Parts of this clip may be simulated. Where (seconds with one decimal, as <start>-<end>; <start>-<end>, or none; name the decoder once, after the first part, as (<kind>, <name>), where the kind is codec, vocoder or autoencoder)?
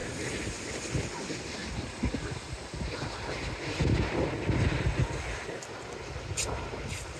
none